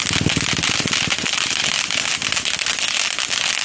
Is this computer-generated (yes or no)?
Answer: no